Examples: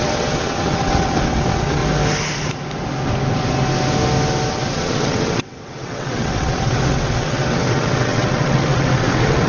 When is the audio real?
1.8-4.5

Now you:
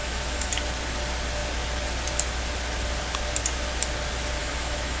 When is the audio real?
0.5-4.4

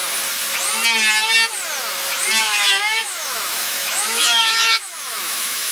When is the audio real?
0.0-2.4